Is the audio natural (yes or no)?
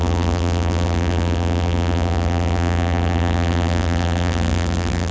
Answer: no